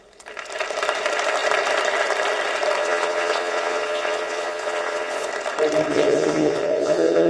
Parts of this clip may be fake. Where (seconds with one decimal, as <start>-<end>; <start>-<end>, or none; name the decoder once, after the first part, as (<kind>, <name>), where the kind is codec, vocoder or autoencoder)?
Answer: 2.8-5.3 (vocoder, Vocos); 5.9-7.3